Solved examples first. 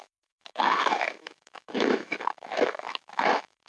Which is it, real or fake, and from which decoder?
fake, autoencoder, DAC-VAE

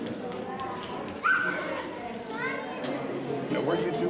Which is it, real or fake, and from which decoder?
real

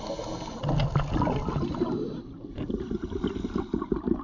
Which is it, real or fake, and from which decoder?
real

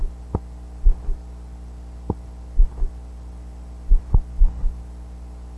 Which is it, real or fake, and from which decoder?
real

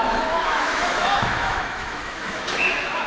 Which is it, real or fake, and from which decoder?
fake, autoencoder, DAC-VAE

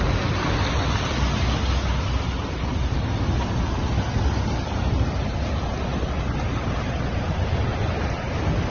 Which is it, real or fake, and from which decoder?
real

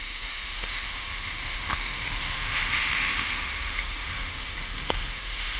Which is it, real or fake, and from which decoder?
fake, autoencoder, DAC-VAE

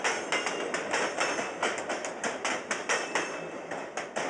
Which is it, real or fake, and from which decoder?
real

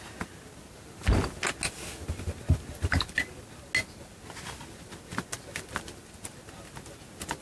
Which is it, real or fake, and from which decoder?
real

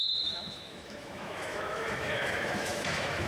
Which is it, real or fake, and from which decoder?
fake, autoencoder, DAC-VAE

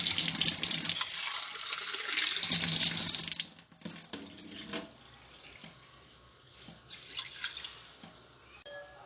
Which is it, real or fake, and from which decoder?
real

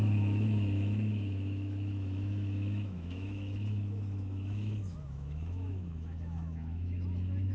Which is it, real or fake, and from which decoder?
fake, autoencoder, DAC-VAE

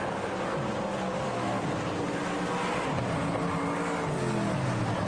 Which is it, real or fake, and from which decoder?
real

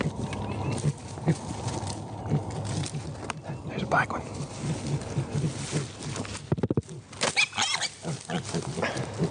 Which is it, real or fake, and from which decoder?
real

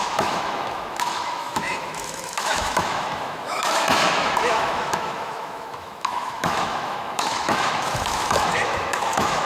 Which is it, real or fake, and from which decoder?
fake, autoencoder, DAC-VAE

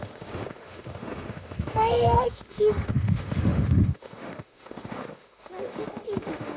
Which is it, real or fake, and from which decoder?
fake, autoencoder, DAC-VAE